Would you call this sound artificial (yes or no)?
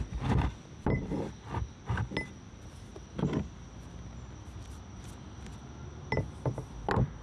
no